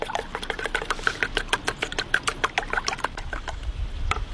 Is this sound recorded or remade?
recorded